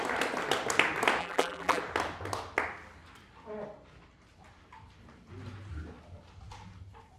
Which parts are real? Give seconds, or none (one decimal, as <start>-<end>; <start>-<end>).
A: 0.0-1.2; 1.8-7.2